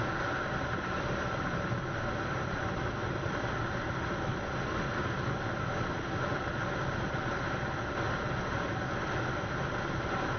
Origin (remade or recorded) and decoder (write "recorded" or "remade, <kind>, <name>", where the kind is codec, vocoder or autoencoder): recorded